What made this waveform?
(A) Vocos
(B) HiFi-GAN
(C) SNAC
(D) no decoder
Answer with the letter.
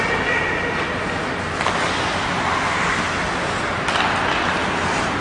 D